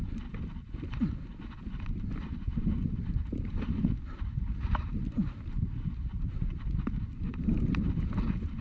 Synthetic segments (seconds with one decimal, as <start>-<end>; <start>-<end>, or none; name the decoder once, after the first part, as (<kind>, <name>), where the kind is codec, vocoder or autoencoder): 3.2-8.6 (vocoder, BigVGAN v2)

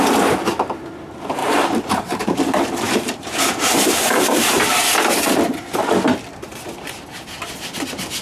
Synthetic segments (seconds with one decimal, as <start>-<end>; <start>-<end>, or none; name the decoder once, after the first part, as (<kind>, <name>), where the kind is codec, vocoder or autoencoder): 1.4-4.8 (vocoder, BigVGAN v2); 6.5-7.0

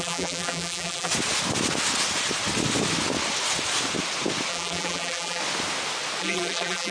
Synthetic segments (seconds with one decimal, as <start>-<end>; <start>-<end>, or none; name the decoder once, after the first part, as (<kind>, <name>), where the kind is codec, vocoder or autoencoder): 0.0-1.1 (vocoder, BigVGAN v2); 4.5-5.4; 6.2-6.9

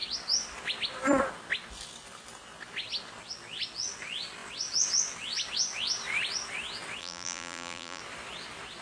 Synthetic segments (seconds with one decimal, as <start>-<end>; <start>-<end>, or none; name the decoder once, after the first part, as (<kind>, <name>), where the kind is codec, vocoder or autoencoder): 7.0-8.0 (vocoder, BigVGAN v2)

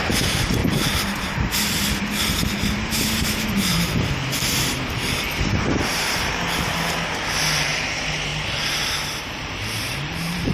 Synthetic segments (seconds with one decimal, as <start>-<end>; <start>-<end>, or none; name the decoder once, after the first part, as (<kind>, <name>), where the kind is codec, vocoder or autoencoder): 0.0-8.3 (vocoder, BigVGAN v2); 9.2-10.5

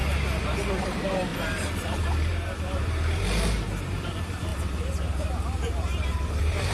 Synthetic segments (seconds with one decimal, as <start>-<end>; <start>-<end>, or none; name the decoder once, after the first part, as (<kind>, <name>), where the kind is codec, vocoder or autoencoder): 0.8-6.7 (vocoder, BigVGAN v2)

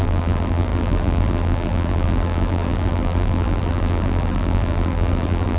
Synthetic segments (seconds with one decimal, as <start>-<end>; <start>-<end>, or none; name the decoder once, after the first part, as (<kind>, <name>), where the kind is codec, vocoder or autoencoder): 0.0-5.6 (vocoder, BigVGAN v2)